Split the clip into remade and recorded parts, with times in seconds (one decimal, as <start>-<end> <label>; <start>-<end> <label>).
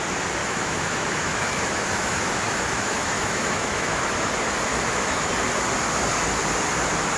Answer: 0.0-0.4 recorded; 0.4-4.3 remade; 4.3-4.7 recorded; 4.7-5.3 remade; 5.3-7.2 recorded